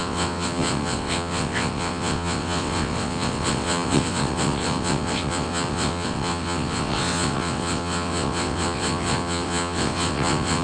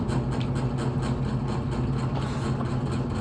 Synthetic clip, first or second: first